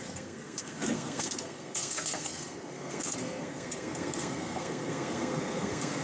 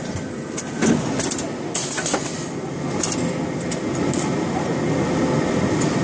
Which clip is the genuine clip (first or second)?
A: second